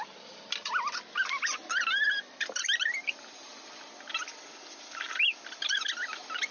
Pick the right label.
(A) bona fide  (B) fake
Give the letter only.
A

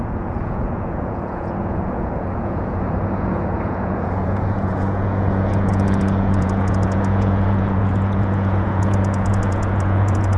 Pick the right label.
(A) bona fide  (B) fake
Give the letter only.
B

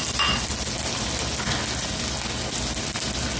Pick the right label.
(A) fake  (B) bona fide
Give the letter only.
B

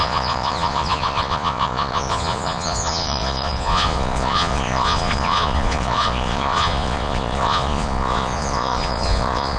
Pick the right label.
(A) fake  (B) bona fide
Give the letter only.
A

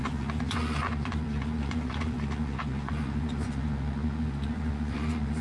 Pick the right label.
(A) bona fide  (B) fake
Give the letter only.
B